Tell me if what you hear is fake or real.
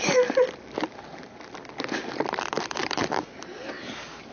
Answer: fake